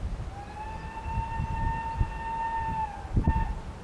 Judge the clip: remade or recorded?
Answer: recorded